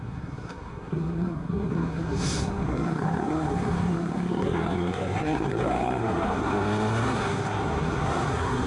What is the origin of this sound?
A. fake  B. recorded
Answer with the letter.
A